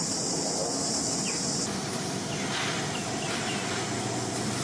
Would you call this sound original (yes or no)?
yes